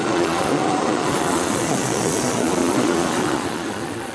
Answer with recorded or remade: remade